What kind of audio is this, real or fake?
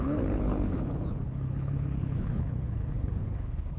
fake